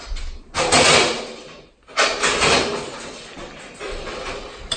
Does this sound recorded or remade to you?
recorded